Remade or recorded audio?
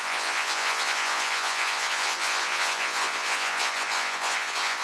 remade